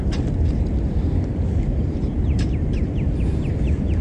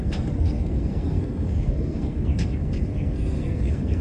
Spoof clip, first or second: second